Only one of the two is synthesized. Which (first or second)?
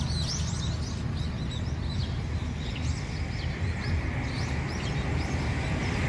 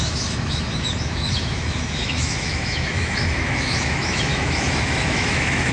second